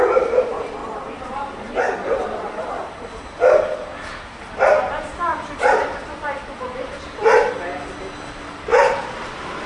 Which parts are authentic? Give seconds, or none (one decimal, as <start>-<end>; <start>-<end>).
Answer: 0.0-0.8; 3.2-5.3; 7.5-8.7